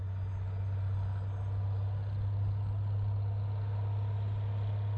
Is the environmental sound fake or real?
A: real